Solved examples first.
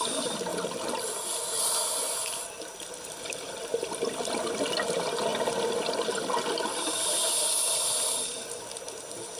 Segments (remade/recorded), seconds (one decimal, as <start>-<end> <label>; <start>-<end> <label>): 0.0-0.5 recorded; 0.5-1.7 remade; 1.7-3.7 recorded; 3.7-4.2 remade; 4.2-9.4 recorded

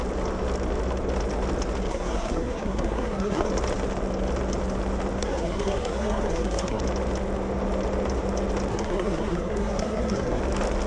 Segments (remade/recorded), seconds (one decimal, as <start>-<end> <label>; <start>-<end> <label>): 0.0-1.9 recorded; 1.9-3.5 remade; 3.5-5.2 recorded; 5.2-6.8 remade; 6.8-8.7 recorded; 8.7-10.4 remade; 10.4-10.9 recorded

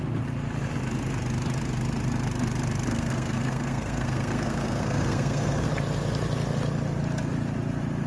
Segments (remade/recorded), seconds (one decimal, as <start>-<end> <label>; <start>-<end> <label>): 0.0-2.9 recorded; 2.9-5.7 remade; 5.7-8.1 recorded

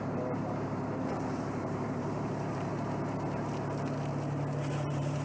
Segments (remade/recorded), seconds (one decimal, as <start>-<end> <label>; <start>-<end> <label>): 0.0-2.7 remade; 2.7-4.7 recorded; 4.7-5.2 remade

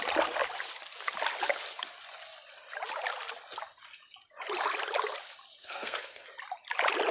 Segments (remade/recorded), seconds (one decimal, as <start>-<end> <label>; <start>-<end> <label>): 0.0-5.6 recorded; 5.6-6.3 remade; 6.3-7.1 recorded

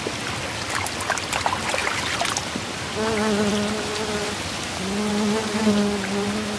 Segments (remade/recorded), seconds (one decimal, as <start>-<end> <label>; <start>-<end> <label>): 0.0-6.6 recorded